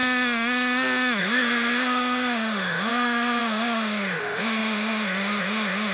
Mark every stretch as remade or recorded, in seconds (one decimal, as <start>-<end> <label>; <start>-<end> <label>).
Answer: 0.0-1.2 recorded; 1.2-5.9 remade